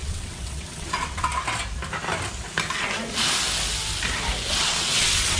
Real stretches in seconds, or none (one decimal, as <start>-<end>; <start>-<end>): 1.3-4.5